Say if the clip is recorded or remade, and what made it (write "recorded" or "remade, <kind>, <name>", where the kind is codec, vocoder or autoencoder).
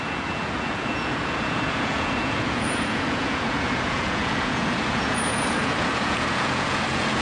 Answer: remade, vocoder, Vocos